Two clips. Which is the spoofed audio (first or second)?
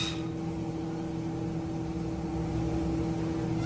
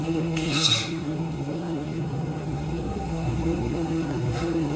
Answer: second